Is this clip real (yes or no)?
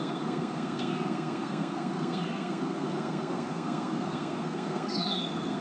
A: no